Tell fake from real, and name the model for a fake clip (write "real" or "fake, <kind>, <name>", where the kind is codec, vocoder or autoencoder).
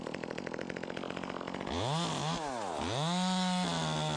real